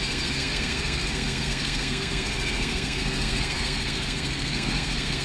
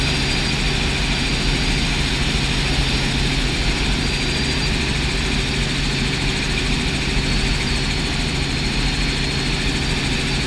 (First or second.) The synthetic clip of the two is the first